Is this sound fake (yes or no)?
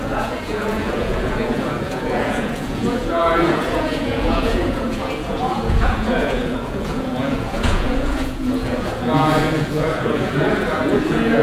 yes